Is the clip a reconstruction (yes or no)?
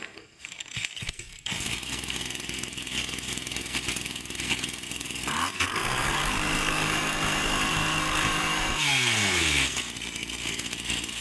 yes